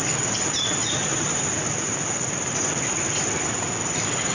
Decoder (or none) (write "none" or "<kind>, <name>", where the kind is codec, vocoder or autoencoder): none